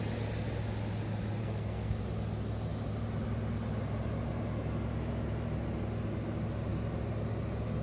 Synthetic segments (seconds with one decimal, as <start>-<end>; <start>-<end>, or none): 1.4-2.0